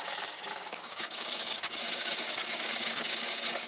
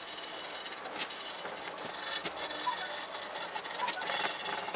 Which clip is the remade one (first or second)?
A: first